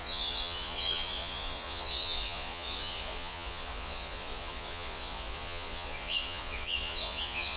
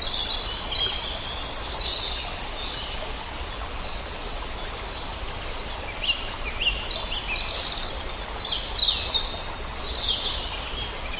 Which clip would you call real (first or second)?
second